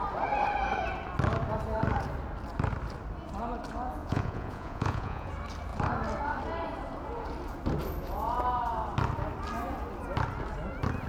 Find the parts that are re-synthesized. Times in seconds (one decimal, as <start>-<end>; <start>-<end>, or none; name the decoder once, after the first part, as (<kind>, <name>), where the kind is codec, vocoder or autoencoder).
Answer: 4.0-5.3 (vocoder, Vocos)